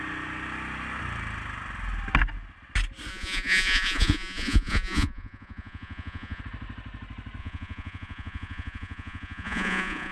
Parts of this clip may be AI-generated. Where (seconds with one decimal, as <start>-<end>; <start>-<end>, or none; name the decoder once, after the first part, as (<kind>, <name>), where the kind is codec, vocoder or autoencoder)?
3.1-6.4 (vocoder, Vocos); 7.4-10.1